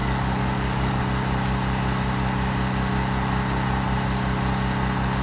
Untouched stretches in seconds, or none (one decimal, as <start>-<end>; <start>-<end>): 1.0-5.2